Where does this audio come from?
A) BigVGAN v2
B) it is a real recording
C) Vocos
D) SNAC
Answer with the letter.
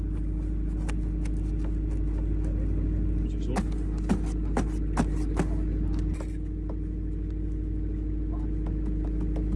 B